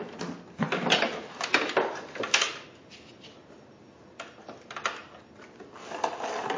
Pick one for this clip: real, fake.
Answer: real